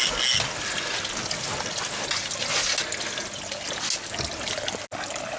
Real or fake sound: real